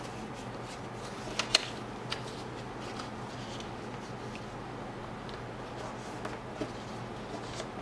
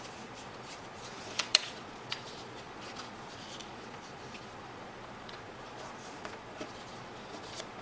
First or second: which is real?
first